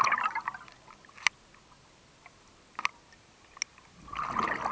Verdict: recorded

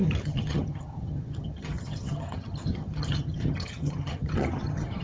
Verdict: remade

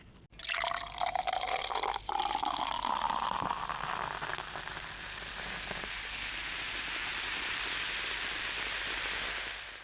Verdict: recorded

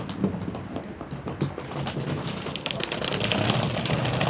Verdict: recorded